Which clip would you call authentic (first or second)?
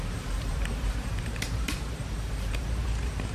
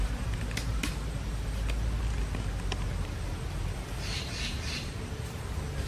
second